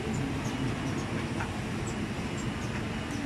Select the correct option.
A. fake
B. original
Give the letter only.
B